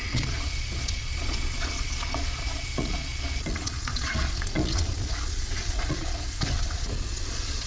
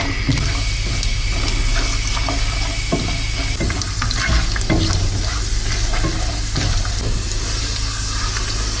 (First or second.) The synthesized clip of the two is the first